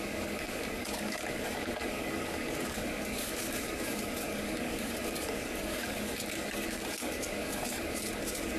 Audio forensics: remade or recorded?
remade